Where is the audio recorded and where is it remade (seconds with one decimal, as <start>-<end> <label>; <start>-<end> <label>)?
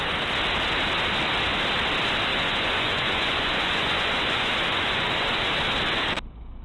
0.0-2.3 recorded; 2.3-5.5 remade; 5.5-6.6 recorded